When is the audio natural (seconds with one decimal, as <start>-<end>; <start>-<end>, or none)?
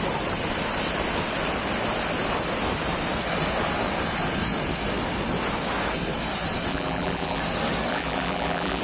0.0-6.7; 7.4-7.9